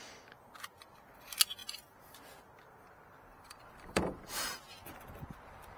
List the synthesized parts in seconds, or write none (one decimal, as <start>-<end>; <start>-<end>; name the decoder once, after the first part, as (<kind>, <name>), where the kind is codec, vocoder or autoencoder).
3.3-4.6 (vocoder, BigVGAN v2)